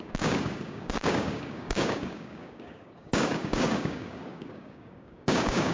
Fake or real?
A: fake